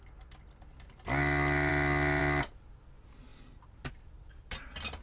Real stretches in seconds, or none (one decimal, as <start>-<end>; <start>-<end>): 0.0-5.0